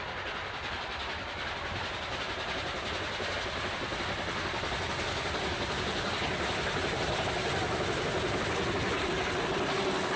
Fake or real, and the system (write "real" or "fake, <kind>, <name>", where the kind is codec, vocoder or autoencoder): real